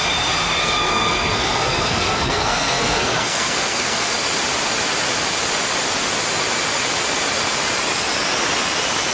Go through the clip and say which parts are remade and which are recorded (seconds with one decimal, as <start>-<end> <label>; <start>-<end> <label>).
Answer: 0.0-0.6 recorded; 0.6-4.1 remade; 4.1-9.1 recorded